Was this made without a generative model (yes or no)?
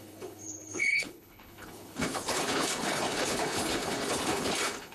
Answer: no